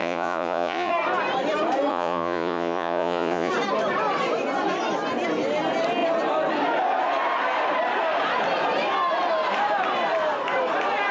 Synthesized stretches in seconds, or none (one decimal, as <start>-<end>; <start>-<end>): 0.0-0.9; 1.9-3.5